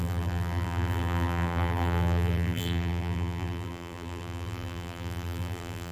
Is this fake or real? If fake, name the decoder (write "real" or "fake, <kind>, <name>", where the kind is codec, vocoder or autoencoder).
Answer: fake, vocoder, BigVGAN v2